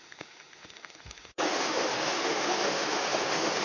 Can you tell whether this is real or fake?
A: fake